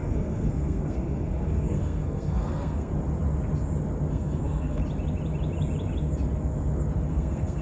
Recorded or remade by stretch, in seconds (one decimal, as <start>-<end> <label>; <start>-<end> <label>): 0.0-2.9 remade; 2.9-4.1 recorded; 4.1-4.8 remade; 4.8-7.1 recorded; 7.1-7.6 remade